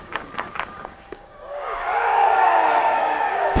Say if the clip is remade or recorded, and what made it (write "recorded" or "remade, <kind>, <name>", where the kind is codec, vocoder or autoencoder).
remade, codec, DAC